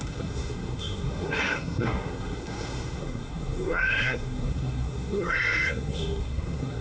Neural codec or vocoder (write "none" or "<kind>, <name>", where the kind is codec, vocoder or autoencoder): codec, SNAC